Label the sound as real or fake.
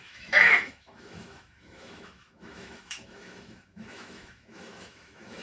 fake